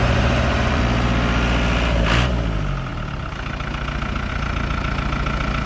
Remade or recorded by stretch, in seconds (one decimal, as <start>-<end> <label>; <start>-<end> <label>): 0.0-0.8 remade; 0.8-5.7 recorded